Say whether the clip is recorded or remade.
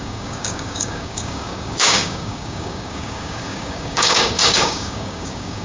remade